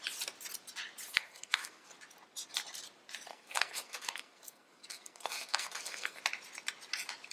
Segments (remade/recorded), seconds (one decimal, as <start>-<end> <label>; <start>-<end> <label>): 0.0-1.1 recorded; 1.1-1.9 remade; 1.9-3.3 recorded; 3.3-6.2 remade; 6.2-7.3 recorded